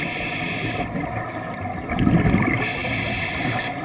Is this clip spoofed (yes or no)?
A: no